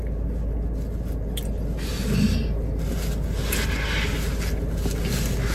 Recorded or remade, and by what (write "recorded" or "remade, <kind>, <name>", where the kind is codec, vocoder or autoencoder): recorded